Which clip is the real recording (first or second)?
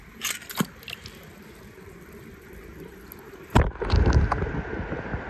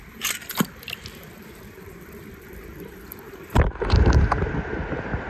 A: first